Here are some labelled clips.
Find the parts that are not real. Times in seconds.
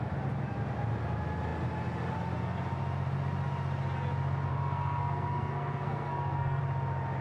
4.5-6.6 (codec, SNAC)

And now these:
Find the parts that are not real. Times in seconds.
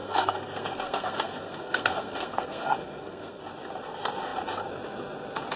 0.0-3.4 (codec, SNAC)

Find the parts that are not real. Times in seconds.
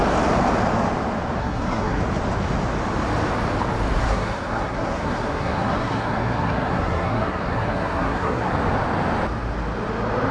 1.4-2.0 (codec, SNAC); 4.0-8.5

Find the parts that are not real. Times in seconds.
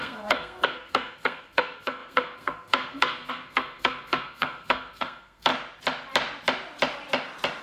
0.0-5.5 (codec, SNAC)